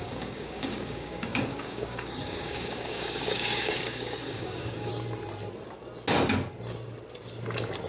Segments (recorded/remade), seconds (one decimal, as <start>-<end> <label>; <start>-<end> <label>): 0.0-4.9 remade; 4.9-7.9 recorded